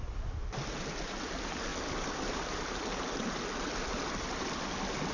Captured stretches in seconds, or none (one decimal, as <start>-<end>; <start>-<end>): 0.0-5.1